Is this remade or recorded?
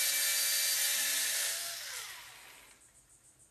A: recorded